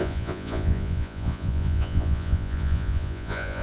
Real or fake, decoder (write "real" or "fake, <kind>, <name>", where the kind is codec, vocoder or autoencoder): fake, vocoder, Vocos